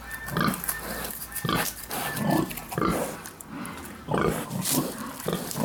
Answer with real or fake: real